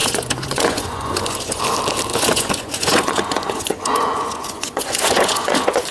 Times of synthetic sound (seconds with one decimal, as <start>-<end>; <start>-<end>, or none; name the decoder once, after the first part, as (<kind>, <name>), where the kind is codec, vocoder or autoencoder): 0.0-1.6 (vocoder, Vocos); 2.1-5.9